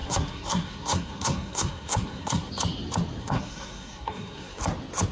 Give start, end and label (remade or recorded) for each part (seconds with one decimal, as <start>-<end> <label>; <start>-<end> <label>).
0.0-2.5 remade; 2.5-3.2 recorded; 3.2-4.6 remade; 4.6-5.1 recorded